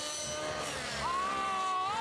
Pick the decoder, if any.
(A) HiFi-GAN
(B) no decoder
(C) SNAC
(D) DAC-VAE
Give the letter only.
B